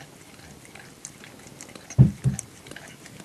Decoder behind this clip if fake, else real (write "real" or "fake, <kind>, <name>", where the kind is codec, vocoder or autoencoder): real